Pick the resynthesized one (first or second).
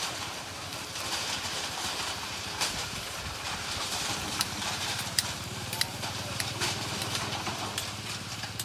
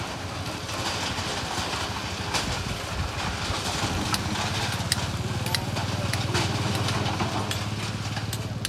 first